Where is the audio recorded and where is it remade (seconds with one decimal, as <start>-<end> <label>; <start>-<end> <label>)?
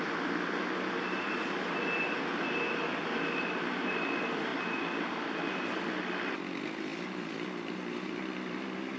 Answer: 0.0-9.0 recorded